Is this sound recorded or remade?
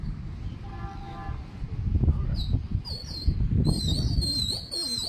recorded